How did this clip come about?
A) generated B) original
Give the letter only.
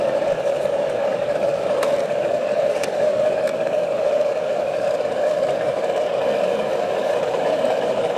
A